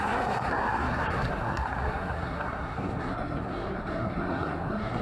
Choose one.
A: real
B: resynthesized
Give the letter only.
B